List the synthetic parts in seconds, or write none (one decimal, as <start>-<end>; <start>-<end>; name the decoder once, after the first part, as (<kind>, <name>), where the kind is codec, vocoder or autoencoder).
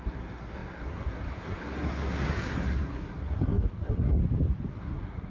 0.0-4.2 (codec, SNAC); 4.7-5.3